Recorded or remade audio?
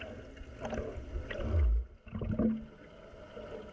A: recorded